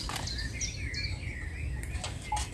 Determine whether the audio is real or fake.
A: real